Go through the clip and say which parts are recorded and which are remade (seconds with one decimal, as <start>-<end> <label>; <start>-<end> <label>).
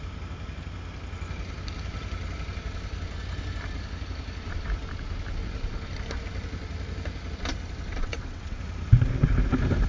0.0-7.9 recorded; 7.9-8.6 remade; 8.6-9.9 recorded